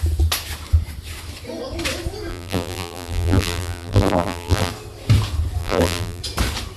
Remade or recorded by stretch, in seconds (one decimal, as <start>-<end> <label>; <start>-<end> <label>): 0.0-2.3 recorded; 2.3-4.7 remade; 4.7-5.6 recorded; 5.6-6.2 remade; 6.2-6.8 recorded